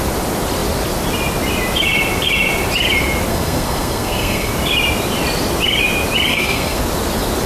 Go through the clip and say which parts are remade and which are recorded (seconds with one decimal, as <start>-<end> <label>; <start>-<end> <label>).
0.0-3.3 recorded; 3.3-4.5 remade; 4.5-6.3 recorded; 6.3-6.8 remade; 6.8-7.5 recorded